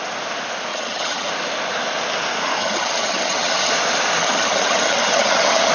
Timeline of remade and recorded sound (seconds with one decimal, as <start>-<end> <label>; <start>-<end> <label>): 0.0-0.7 recorded; 0.7-1.3 remade; 1.3-2.6 recorded; 2.6-3.7 remade; 3.7-4.2 recorded; 4.2-5.7 remade